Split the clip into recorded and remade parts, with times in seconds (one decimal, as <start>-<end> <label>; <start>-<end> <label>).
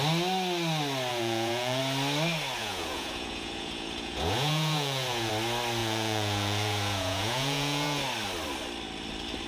0.0-1.1 recorded; 1.1-1.8 remade; 1.8-2.6 recorded; 2.6-5.3 remade; 5.3-5.8 recorded; 5.8-8.0 remade; 8.0-9.5 recorded